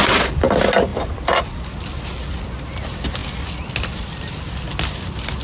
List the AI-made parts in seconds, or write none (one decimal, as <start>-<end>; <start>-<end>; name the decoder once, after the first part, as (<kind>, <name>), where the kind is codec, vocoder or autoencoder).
none